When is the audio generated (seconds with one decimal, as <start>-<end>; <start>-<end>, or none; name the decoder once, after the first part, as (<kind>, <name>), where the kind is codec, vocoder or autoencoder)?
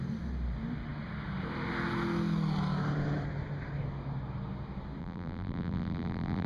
5.0-6.5 (vocoder, BigVGAN v2)